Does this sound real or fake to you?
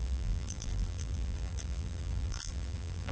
fake